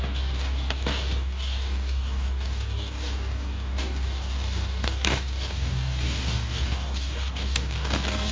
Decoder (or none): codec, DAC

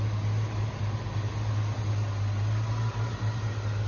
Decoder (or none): none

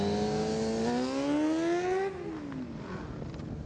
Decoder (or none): none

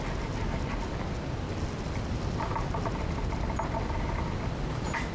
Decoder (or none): none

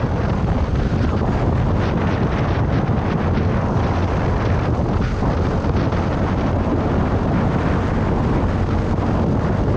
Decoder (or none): none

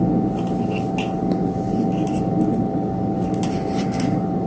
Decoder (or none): none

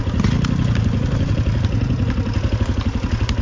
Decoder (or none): none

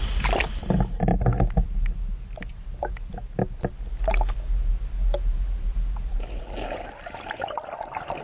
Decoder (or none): none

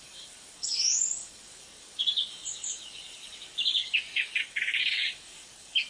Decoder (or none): codec, DAC